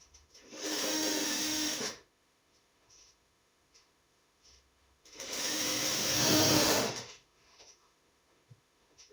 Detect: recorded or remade remade